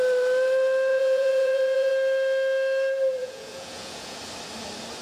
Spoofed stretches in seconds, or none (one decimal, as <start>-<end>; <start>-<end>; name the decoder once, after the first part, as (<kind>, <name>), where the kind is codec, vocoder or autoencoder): 0.9-1.9 (vocoder, Vocos); 3.2-4.2